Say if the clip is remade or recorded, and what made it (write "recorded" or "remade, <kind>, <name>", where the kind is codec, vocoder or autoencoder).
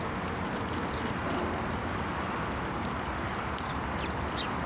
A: recorded